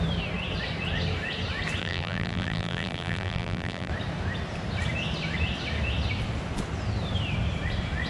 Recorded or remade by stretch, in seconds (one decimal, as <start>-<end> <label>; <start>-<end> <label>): 0.0-1.8 recorded; 1.8-3.9 remade; 3.9-8.1 recorded